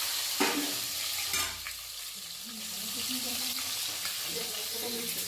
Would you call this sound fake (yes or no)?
yes